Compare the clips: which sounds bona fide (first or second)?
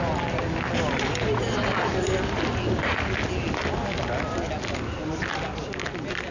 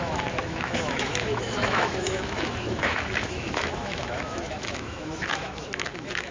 first